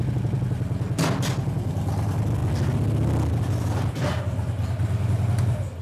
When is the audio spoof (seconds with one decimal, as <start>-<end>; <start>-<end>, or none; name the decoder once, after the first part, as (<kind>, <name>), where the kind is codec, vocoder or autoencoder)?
none